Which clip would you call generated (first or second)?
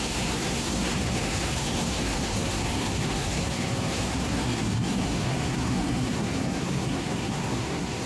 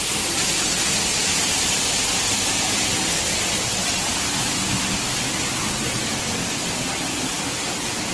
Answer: first